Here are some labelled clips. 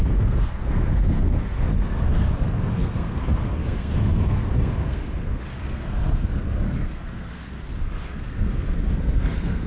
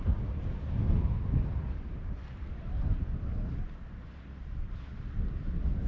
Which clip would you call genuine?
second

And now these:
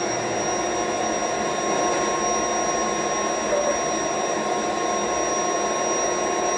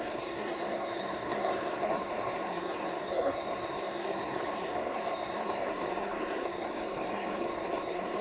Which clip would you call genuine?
first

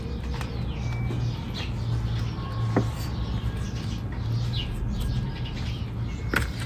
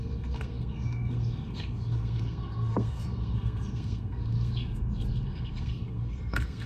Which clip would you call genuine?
first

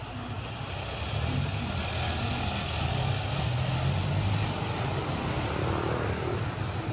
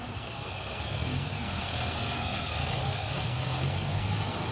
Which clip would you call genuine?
first